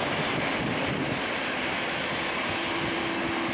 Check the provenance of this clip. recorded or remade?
recorded